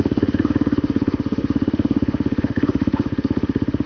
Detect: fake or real fake